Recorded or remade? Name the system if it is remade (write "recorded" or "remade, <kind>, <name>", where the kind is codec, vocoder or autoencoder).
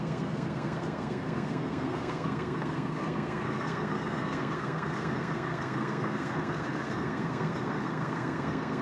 remade, codec, SNAC